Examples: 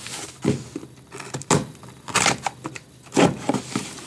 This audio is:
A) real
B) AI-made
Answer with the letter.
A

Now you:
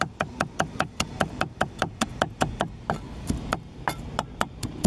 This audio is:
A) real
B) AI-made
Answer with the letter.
B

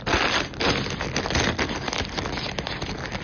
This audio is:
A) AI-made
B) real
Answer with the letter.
B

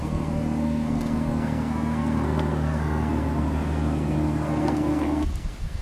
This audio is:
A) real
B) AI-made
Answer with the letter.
B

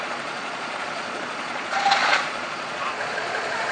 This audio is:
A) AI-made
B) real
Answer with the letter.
A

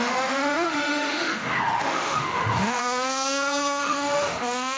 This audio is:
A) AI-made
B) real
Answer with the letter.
A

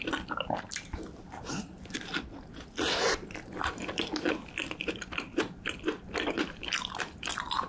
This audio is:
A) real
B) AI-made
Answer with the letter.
A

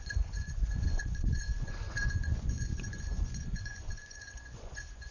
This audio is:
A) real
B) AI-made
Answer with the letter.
B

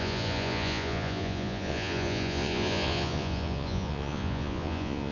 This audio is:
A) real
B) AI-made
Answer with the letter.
B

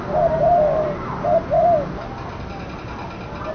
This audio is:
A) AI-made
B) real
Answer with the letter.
B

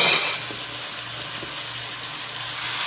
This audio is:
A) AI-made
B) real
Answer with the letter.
B